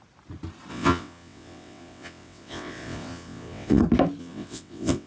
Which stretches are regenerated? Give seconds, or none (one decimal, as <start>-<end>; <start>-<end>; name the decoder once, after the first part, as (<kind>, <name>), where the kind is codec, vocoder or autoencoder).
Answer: 0.7-3.8 (vocoder, WaveNeXt); 4.2-5.1